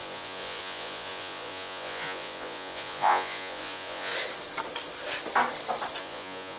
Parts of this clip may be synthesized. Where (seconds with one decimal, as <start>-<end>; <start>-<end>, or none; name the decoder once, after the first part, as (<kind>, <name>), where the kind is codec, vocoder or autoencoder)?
0.0-4.1 (vocoder, Vocos); 6.0-6.6